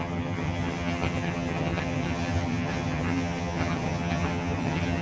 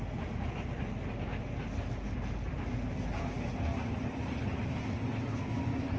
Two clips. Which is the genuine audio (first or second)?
second